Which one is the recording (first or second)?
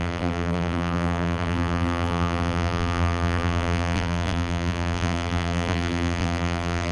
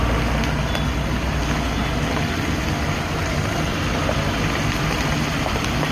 second